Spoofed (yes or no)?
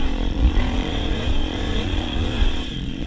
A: yes